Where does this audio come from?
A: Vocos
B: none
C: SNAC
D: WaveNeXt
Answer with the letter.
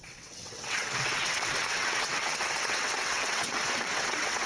D